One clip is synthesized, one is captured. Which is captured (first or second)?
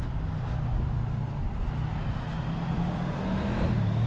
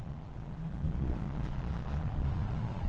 first